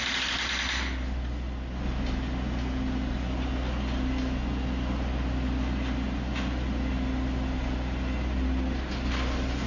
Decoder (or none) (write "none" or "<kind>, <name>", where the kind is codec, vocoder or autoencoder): none